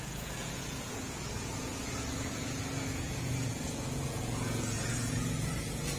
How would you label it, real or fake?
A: fake